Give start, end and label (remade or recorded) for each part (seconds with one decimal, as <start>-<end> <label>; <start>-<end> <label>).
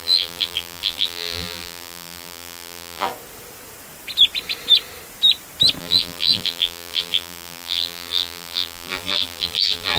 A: 0.0-3.1 remade; 3.1-5.8 recorded; 5.8-10.0 remade